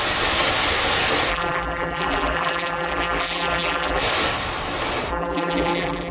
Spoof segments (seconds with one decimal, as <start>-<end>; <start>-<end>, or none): 1.3-4.0; 5.1-6.1